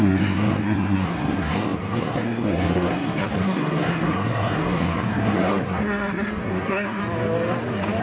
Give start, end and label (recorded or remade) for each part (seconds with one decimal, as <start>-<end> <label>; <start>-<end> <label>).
0.0-7.0 remade; 7.0-8.0 recorded